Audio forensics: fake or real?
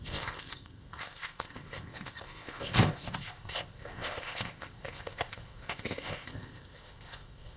fake